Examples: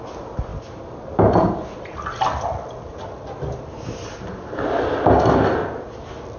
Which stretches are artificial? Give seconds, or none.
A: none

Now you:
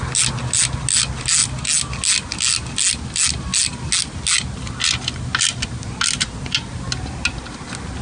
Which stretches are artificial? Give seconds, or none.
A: none

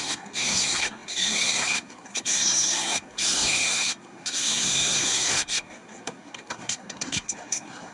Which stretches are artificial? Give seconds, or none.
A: 0.0-7.9

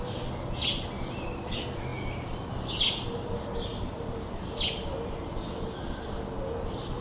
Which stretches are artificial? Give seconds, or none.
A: none

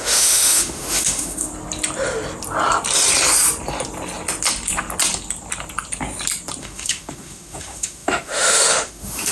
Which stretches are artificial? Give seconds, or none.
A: 0.0-1.5; 6.6-9.3

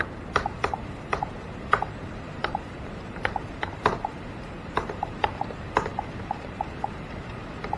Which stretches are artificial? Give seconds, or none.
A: 0.0-7.8